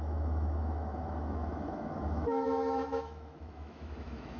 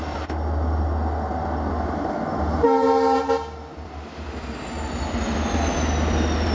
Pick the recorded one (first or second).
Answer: second